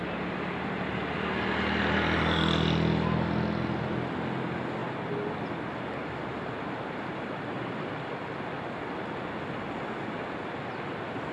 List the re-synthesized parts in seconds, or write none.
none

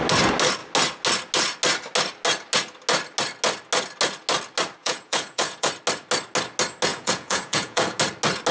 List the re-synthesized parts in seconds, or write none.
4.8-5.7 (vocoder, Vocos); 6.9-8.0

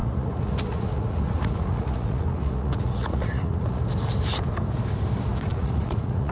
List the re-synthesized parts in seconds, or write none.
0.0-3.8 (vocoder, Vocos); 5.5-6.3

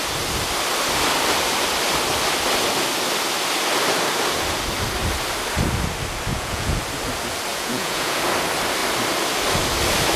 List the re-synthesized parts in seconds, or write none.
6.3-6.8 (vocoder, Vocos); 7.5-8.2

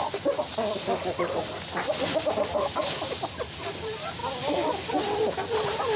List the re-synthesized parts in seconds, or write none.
none

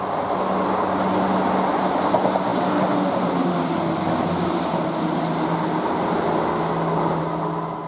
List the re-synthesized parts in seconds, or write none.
none

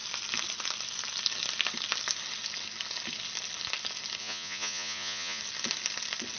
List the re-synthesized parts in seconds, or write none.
4.2-5.4 (vocoder, Vocos)

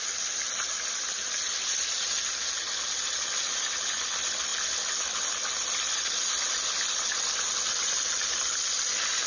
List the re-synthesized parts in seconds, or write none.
none